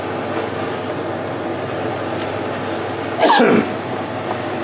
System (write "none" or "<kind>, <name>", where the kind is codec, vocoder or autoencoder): none